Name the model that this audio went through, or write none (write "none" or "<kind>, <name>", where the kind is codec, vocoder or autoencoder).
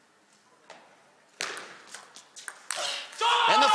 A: none